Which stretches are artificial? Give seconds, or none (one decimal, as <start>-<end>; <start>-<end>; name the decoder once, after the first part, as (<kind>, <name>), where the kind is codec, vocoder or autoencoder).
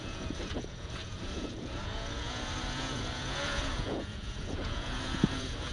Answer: 0.0-5.7 (vocoder, Vocos)